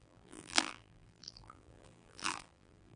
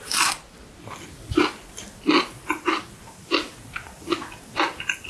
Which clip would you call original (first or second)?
second